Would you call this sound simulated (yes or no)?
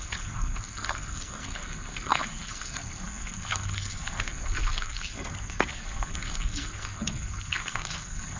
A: yes